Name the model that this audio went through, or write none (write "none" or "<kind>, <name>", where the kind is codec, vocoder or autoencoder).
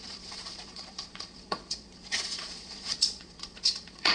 vocoder, Vocos